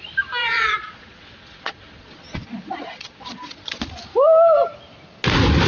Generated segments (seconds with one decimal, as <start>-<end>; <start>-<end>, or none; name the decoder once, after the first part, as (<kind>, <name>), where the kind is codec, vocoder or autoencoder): 0.4-3.8 (vocoder, Vocos)